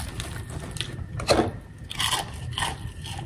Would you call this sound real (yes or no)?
yes